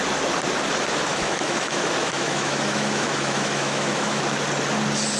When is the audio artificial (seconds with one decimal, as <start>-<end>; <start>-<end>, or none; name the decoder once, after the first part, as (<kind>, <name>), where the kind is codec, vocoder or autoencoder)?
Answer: 1.1-4.2 (autoencoder, DAC-VAE)

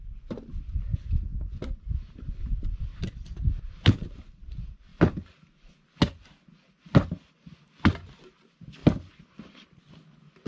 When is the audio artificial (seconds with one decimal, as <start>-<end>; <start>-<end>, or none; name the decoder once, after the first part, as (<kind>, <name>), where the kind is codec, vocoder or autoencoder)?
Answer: 0.0-4.9 (vocoder, BigVGAN v2); 7.3-8.8